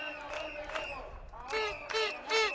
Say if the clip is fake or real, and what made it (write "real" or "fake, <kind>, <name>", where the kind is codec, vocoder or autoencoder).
real